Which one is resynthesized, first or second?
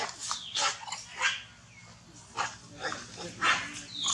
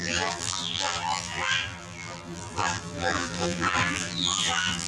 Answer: second